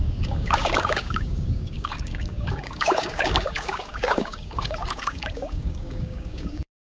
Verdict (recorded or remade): remade